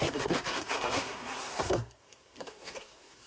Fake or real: fake